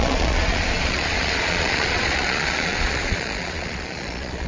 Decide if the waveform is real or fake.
fake